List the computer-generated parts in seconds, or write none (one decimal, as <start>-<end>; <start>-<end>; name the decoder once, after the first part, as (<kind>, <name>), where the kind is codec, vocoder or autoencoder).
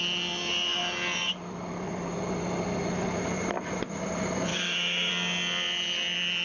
4.5-5.1 (autoencoder, DAC-VAE)